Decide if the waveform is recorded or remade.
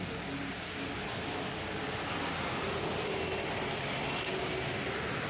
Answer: recorded